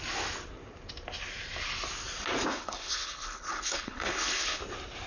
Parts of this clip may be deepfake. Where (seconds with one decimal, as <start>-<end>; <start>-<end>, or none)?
2.5-4.6